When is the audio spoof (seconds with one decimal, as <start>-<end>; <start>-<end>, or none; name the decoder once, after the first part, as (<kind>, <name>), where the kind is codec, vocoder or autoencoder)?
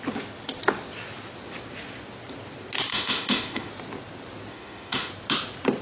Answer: 2.9-3.7 (autoencoder, DAC-VAE); 4.5-5.1